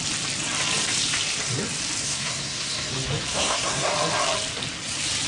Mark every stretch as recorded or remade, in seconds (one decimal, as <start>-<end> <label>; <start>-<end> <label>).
0.0-2.0 recorded; 2.0-2.9 remade; 2.9-3.3 recorded; 3.3-3.9 remade; 3.9-5.3 recorded